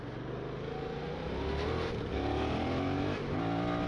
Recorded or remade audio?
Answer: recorded